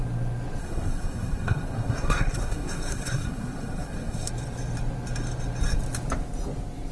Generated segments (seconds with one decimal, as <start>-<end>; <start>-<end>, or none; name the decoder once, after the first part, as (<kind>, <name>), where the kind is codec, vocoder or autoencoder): 0.6-4.3 (codec, SNAC)